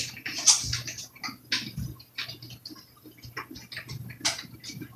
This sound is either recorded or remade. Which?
recorded